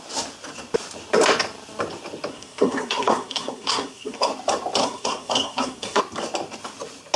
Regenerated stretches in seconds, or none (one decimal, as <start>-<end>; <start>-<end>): 2.3-4.3; 4.8-6.0